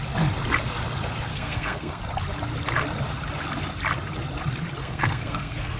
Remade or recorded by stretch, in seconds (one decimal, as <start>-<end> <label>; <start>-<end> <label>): 0.0-1.3 recorded; 1.3-2.0 remade; 2.0-4.8 recorded; 4.8-5.8 remade